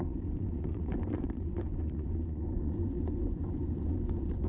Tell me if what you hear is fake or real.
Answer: fake